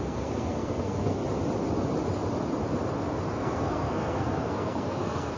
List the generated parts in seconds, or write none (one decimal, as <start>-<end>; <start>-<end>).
0.0-1.2; 3.3-5.4